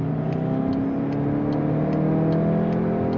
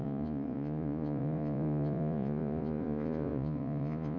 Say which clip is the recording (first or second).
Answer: first